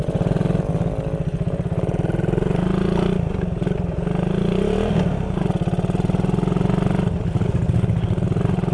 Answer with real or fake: real